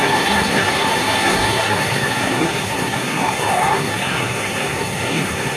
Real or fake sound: fake